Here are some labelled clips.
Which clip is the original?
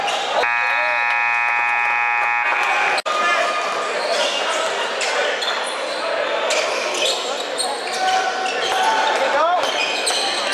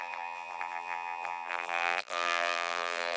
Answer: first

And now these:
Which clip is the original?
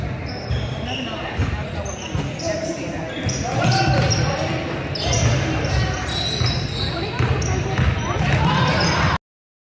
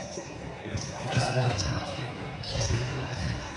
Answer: first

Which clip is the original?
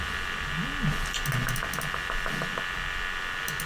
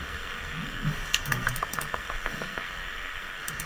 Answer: first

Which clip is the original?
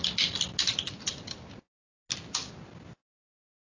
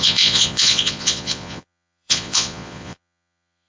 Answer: first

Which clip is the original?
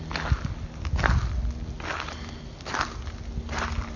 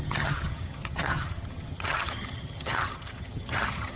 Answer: first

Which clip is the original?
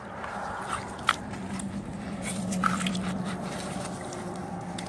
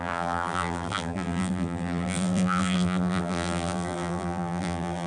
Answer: first